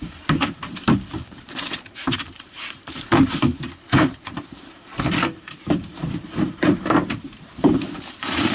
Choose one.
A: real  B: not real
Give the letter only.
B